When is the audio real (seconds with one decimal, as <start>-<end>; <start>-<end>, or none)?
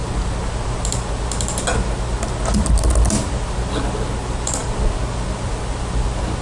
0.0-6.4